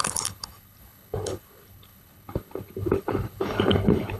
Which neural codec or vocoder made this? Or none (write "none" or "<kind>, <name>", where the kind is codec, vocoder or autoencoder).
codec, HILCodec